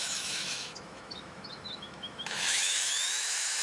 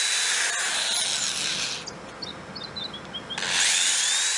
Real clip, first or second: second